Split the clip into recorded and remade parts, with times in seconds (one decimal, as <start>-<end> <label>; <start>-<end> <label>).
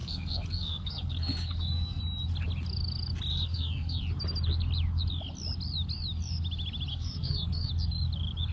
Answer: 0.0-2.0 remade; 2.0-3.3 recorded; 3.3-4.0 remade; 4.0-6.9 recorded; 6.9-7.7 remade; 7.7-8.5 recorded